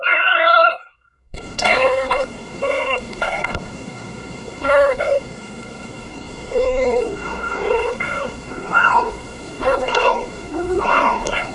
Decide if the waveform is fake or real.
fake